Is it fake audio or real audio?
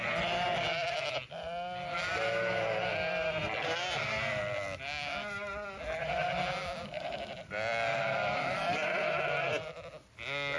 real